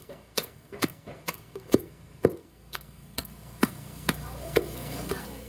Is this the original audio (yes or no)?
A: no